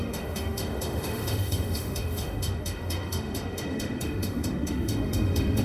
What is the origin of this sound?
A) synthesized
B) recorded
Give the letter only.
A